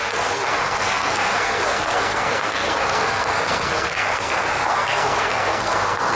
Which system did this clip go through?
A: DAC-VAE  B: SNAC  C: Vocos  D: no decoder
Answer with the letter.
B